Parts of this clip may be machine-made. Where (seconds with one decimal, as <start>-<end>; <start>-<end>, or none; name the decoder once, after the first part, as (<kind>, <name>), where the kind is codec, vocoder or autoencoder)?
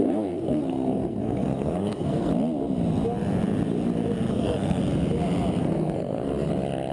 0.0-2.3 (codec, SNAC); 4.3-4.8; 5.6-6.3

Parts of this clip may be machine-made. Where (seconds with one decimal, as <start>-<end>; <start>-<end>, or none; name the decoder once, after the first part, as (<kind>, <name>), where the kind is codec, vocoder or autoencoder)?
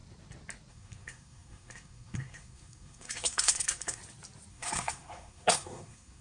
0.7-4.0 (codec, SNAC); 4.5-6.2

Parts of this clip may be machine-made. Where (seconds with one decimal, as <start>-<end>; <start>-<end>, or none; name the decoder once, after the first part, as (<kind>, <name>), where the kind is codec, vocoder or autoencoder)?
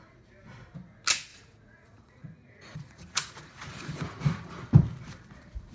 1.3-4.7 (vocoder, Vocos)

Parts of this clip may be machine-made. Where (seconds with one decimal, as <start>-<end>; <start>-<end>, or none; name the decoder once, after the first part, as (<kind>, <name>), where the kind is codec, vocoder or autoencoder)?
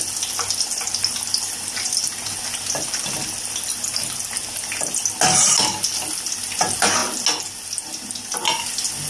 none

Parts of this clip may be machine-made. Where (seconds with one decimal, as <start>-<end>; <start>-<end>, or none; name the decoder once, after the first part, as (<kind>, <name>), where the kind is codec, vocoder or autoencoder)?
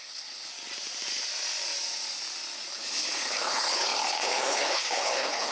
0.0-0.5 (codec, HILCodec); 2.7-5.5